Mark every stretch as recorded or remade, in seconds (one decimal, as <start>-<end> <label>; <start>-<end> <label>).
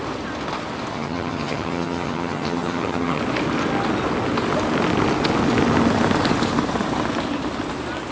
0.0-0.9 recorded; 0.9-3.2 remade; 3.2-8.1 recorded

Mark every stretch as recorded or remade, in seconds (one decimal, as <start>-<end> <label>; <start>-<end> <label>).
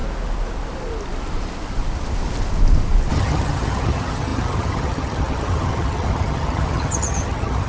0.0-3.1 recorded; 3.1-7.7 remade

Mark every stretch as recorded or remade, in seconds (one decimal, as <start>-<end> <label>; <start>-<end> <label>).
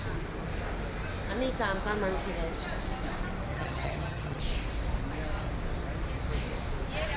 0.0-3.5 recorded; 3.5-4.4 remade; 4.4-7.2 recorded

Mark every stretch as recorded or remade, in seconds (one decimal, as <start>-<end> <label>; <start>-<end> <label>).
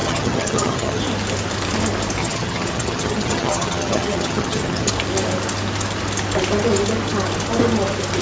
0.0-1.0 remade; 1.0-2.2 recorded; 2.2-4.9 remade; 4.9-8.2 recorded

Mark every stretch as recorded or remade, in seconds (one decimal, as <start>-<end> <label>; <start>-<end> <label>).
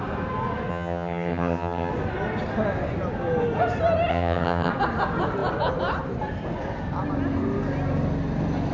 0.0-0.7 recorded; 0.7-1.9 remade; 1.9-4.1 recorded; 4.1-4.7 remade; 4.7-8.7 recorded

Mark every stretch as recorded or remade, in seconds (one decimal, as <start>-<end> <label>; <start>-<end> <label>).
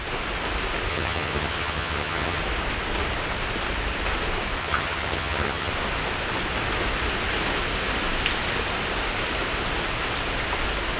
0.0-0.9 recorded; 0.9-2.4 remade; 2.4-4.6 recorded; 4.6-5.7 remade; 5.7-11.0 recorded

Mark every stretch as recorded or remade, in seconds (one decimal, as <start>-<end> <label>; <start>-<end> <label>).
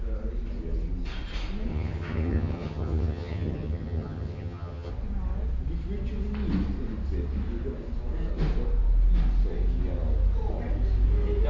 0.0-1.7 recorded; 1.7-4.9 remade; 4.9-11.5 recorded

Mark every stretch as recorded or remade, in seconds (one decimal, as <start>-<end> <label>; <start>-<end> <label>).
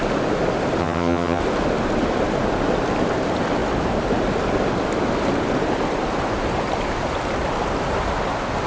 0.0-0.8 recorded; 0.8-1.4 remade; 1.4-8.7 recorded